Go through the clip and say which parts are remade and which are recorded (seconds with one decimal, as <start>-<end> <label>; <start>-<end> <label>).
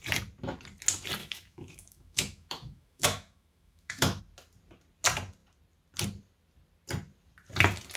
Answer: 0.0-1.2 recorded; 1.2-4.2 remade; 4.2-8.0 recorded